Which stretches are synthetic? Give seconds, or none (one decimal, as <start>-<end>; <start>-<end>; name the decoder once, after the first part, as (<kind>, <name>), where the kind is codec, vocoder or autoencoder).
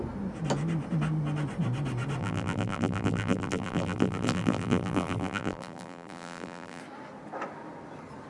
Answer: 2.2-6.8 (vocoder, BigVGAN v2)